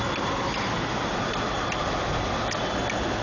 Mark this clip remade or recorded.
recorded